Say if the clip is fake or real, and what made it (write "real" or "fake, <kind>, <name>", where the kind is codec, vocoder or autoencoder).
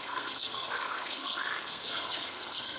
fake, codec, SNAC